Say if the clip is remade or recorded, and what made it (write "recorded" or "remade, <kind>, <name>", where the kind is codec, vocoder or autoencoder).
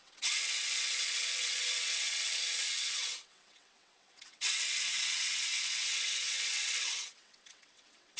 remade, vocoder, WaveNeXt